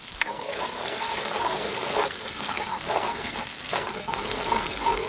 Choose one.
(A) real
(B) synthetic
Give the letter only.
B